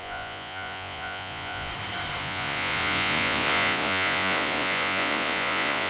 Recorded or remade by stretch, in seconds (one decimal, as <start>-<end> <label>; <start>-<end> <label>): 0.0-1.7 remade; 1.7-2.2 recorded; 2.2-5.9 remade